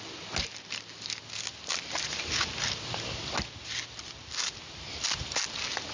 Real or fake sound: real